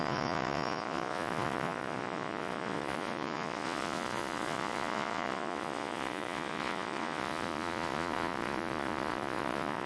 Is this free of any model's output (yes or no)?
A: no